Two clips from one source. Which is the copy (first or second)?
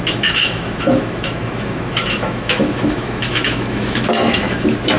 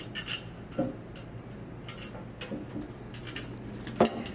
first